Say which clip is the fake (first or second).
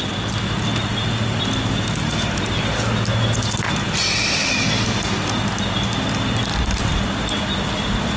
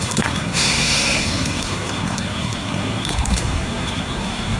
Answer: second